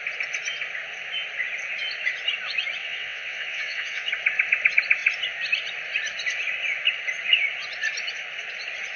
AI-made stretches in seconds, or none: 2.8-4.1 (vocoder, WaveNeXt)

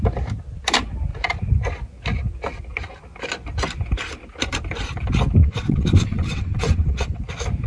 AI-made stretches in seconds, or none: 5.4-7.2 (vocoder, WaveNeXt)

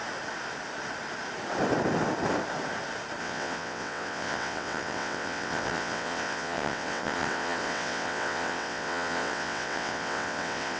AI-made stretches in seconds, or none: 3.2-10.8 (vocoder, WaveNeXt)

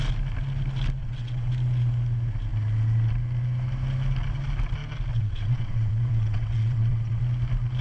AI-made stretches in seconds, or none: 1.0-1.5 (vocoder, WaveNeXt); 5.1-7.2

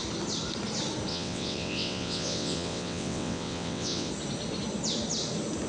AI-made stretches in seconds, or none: 1.1-4.1 (vocoder, WaveNeXt)